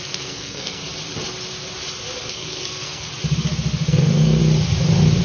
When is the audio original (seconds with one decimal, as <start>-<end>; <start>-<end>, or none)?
0.8-2.3; 3.1-3.9; 4.4-5.2